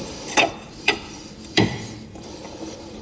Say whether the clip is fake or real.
fake